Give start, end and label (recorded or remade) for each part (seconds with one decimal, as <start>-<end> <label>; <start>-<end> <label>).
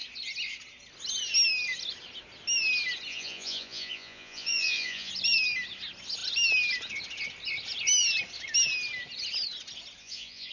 0.0-3.1 recorded; 3.1-5.1 remade; 5.1-10.0 recorded; 10.0-10.5 remade